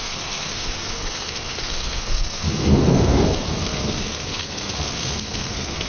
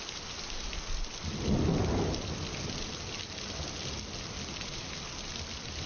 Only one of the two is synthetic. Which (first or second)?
first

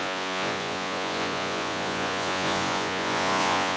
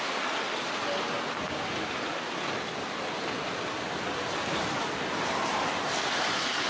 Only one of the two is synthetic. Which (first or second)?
first